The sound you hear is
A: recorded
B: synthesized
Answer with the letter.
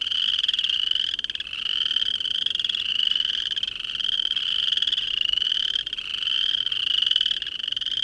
A